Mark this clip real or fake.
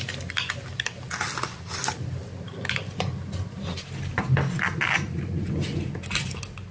real